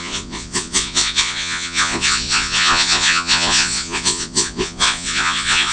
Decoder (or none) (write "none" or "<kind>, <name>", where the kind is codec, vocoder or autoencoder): vocoder, Vocos